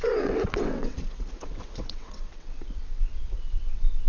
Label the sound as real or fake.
fake